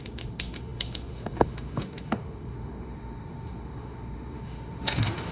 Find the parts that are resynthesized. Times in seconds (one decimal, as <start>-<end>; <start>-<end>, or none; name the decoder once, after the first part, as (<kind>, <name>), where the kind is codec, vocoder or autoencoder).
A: 0.0-5.3 (autoencoder, DAC-VAE)